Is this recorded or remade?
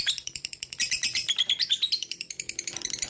remade